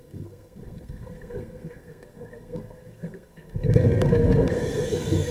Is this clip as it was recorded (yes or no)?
no